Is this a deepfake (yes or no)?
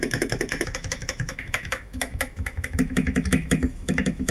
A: yes